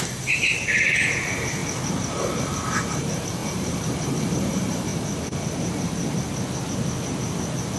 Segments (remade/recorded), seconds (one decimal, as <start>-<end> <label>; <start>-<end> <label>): 0.0-0.5 remade; 0.5-1.2 recorded; 1.2-1.6 remade; 1.6-2.1 recorded; 2.1-4.9 remade; 4.9-7.8 recorded